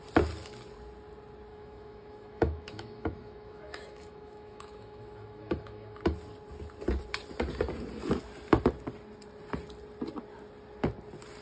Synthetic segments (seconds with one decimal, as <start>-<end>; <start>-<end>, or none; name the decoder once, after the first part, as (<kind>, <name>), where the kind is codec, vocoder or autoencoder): 1.5-6.0 (autoencoder, DAC-VAE)